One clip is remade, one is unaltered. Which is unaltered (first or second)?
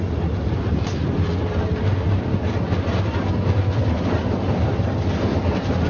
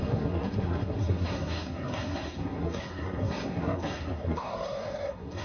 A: first